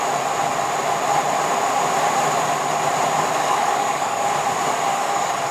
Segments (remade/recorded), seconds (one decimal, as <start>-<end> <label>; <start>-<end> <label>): 0.0-3.4 recorded; 3.4-4.3 remade; 4.3-4.9 recorded; 4.9-5.5 remade